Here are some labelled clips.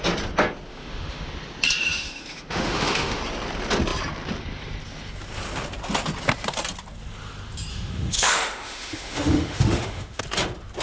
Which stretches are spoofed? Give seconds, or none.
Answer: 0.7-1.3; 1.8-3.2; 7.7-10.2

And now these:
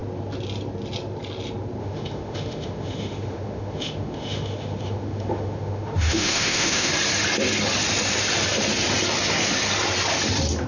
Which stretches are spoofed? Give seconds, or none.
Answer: 1.8-6.9

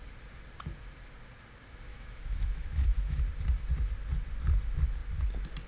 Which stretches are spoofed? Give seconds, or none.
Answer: 1.9-3.2

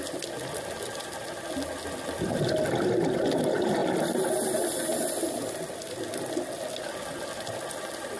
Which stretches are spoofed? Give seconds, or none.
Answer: none